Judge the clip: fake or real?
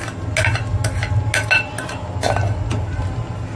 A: real